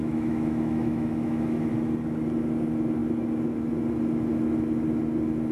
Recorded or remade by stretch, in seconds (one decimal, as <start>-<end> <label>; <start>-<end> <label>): 0.0-1.7 remade; 1.7-5.5 recorded